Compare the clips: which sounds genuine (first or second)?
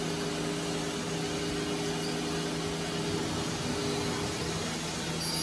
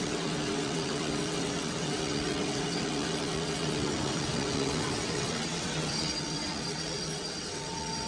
first